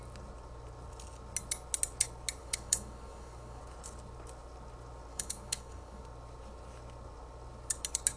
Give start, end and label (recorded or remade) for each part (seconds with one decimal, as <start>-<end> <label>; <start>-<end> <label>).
0.0-2.4 recorded; 2.4-3.6 remade; 3.6-5.1 recorded; 5.1-6.0 remade; 6.0-8.2 recorded